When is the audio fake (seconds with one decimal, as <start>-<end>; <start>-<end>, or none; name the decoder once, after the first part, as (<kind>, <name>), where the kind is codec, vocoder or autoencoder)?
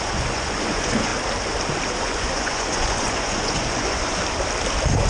0.0-1.1 (vocoder, Vocos); 2.0-4.2